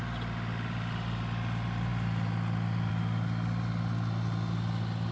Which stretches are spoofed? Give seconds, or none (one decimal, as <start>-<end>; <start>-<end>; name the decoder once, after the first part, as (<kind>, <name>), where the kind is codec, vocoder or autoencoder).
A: none